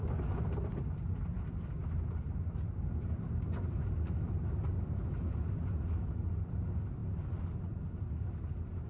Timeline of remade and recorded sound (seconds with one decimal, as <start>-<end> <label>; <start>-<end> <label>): 0.0-8.9 recorded